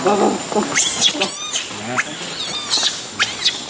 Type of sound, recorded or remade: recorded